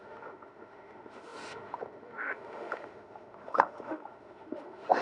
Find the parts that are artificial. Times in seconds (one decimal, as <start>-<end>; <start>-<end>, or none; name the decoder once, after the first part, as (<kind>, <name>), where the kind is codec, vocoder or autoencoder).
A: 0.0-5.0 (autoencoder, DAC-VAE)